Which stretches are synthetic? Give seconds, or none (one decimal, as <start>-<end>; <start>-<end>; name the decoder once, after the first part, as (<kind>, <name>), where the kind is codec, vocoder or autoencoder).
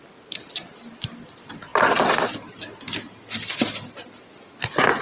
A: none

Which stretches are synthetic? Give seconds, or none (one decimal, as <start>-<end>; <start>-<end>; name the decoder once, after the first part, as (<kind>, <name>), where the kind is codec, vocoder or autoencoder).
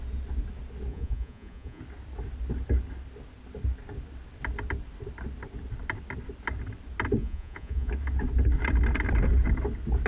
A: 0.9-1.8 (vocoder, Vocos); 7.2-7.9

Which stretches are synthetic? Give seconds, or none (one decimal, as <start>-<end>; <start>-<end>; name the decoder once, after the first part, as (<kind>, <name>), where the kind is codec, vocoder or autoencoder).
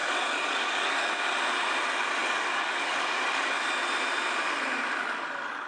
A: 0.0-1.1 (codec, DAC); 2.2-3.6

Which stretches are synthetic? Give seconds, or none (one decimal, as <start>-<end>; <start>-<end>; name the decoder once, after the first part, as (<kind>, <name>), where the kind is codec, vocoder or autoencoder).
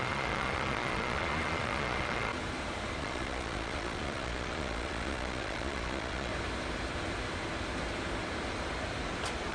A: 0.0-2.3 (vocoder, Vocos); 3.0-6.3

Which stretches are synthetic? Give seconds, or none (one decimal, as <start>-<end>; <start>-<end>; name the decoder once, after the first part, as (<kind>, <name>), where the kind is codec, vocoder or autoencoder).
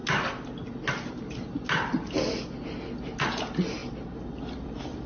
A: 3.8-5.1 (vocoder, BigVGAN v2)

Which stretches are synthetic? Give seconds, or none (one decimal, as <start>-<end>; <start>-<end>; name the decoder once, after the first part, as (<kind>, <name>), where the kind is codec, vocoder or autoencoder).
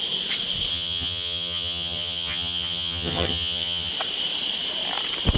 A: 0.7-3.9 (vocoder, HiFi-GAN)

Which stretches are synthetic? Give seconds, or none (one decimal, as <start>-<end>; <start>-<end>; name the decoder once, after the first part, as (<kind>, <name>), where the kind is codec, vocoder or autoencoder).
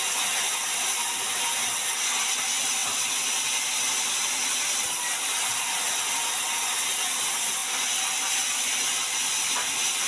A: none